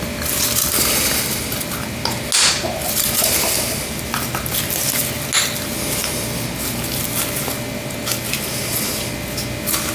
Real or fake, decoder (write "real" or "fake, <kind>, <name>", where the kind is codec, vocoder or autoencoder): real